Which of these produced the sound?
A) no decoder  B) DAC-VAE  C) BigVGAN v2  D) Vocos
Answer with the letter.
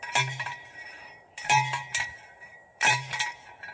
C